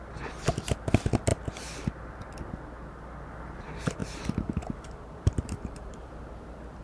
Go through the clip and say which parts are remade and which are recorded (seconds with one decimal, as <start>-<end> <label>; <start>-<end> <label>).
0.0-4.0 recorded; 4.0-6.1 remade; 6.1-6.8 recorded